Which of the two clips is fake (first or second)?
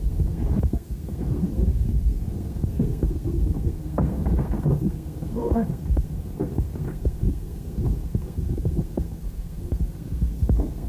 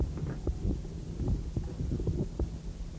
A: first